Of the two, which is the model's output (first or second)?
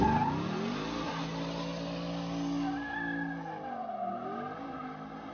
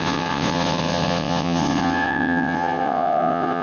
second